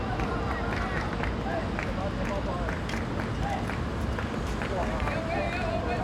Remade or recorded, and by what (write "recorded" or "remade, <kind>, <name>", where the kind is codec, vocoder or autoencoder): recorded